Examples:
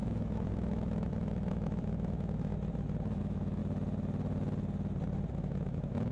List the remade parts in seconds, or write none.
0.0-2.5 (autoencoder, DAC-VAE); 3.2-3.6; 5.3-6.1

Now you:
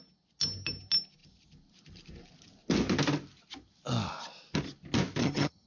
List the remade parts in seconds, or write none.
5.2-5.7 (vocoder, HiFi-GAN)

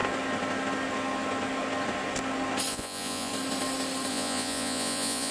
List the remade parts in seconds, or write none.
2.7-3.3 (vocoder, Vocos); 4.1-5.3